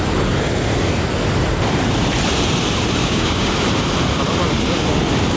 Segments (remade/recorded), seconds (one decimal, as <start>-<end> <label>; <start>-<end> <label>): 0.0-3.0 recorded; 3.0-3.5 remade; 3.5-5.4 recorded